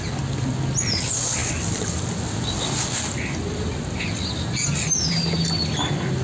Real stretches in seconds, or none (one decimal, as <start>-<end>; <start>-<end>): 0.0-6.2